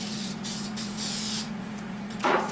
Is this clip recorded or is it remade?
remade